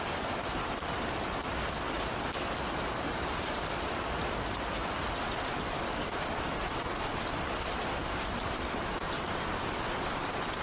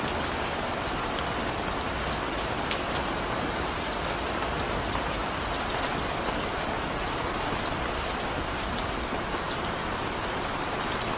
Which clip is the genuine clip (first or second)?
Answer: second